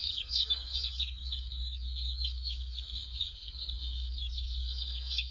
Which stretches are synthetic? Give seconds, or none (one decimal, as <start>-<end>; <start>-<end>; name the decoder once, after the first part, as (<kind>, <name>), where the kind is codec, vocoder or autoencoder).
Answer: 0.0-5.3 (codec, SNAC)